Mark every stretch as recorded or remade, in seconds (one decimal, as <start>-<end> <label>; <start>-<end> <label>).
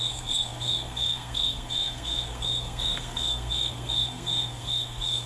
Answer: 0.0-5.3 remade